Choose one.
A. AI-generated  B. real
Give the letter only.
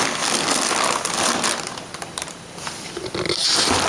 B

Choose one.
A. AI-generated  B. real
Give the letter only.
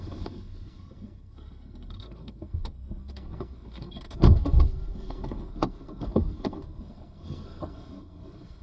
A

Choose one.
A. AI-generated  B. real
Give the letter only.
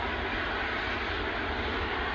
B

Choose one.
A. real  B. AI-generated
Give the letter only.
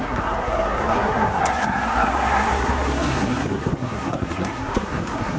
B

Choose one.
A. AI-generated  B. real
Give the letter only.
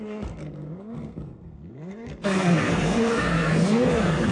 A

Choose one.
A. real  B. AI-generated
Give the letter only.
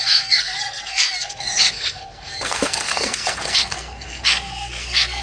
B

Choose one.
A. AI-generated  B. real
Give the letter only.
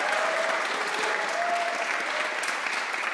B